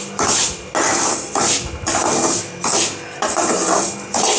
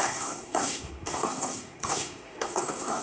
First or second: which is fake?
second